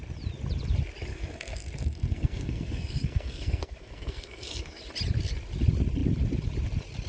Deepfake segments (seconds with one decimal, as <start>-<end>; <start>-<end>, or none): 1.1-4.8